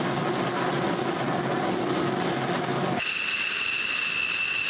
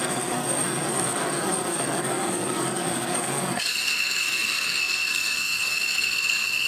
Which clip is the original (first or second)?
first